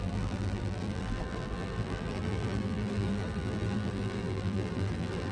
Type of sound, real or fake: fake